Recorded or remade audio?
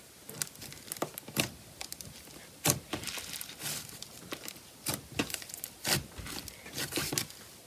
recorded